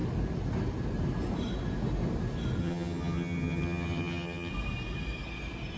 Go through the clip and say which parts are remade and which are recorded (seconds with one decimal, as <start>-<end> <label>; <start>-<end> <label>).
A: 0.0-2.6 recorded; 2.6-4.5 remade; 4.5-5.8 recorded